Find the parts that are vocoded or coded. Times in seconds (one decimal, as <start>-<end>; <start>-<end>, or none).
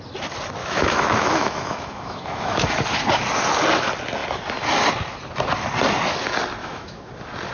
0.6-2.8; 6.6-7.1